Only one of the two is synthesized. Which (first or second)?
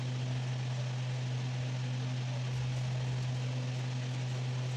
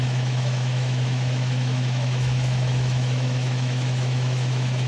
second